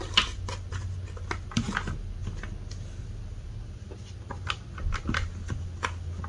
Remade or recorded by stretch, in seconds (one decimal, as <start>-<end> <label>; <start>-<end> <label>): 0.0-6.3 recorded